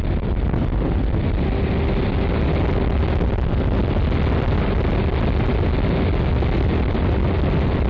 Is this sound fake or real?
real